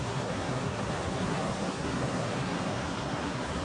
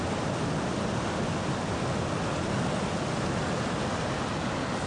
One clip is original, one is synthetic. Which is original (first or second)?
second